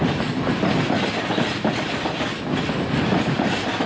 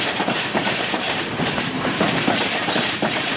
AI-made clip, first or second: second